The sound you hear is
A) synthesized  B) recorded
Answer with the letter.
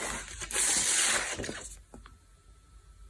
B